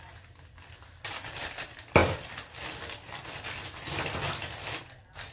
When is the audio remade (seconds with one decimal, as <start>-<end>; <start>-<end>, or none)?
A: 0.0-2.0; 3.4-5.3